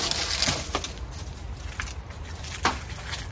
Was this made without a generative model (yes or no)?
yes